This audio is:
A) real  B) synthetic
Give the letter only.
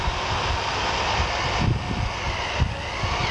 A